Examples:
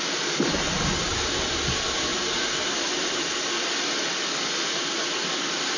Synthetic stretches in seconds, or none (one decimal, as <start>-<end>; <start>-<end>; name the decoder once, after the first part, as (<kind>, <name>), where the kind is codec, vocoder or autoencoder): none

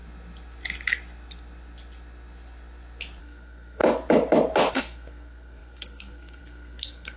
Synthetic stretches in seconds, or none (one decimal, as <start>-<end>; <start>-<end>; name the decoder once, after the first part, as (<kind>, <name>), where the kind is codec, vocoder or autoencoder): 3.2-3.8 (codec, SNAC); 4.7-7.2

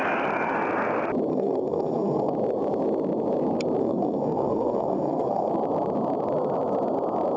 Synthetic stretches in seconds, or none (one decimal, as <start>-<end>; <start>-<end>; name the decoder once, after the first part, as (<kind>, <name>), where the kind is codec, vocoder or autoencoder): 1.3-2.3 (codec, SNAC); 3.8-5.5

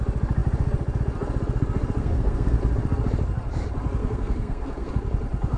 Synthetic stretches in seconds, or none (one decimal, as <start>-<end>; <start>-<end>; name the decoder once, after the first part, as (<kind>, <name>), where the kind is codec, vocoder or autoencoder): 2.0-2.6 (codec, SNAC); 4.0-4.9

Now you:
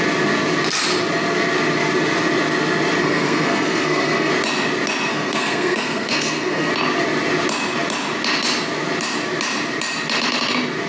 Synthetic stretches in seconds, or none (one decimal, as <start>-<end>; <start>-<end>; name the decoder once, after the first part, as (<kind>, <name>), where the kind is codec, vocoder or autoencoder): 3.0-4.3 (codec, SNAC); 5.1-6.7

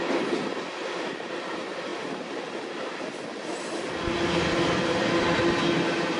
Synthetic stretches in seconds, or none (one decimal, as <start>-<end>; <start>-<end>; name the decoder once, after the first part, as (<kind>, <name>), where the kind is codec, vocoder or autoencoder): none

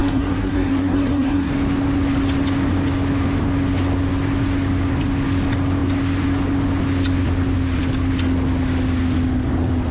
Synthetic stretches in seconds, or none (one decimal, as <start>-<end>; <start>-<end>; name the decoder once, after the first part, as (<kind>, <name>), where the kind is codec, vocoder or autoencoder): 0.0-1.5 (codec, SNAC)

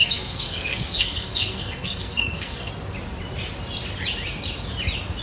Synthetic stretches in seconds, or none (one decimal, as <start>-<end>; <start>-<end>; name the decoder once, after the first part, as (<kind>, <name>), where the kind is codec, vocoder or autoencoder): 0.0-2.7 (codec, SNAC)